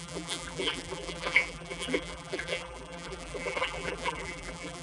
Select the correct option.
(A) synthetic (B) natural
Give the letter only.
A